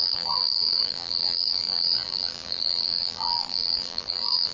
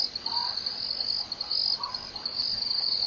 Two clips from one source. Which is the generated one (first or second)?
first